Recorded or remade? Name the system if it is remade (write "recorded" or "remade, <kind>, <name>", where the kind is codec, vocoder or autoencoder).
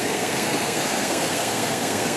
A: remade, codec, SNAC